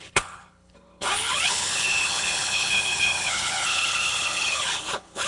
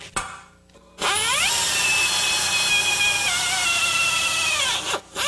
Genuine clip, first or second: second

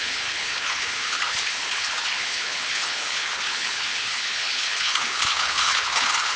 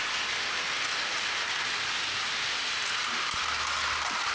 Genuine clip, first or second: second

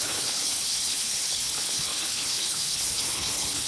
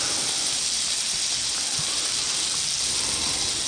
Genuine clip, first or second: second